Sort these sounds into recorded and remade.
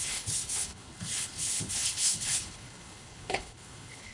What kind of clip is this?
remade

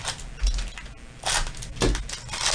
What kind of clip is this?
recorded